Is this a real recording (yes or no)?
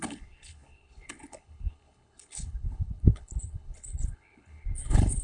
no